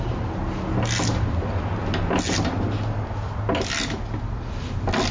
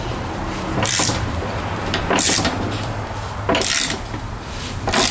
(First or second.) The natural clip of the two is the first